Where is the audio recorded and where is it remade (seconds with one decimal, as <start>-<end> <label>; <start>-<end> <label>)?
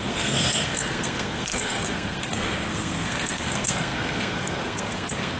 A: 0.0-5.4 remade